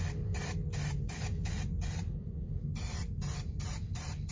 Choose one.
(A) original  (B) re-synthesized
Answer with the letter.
A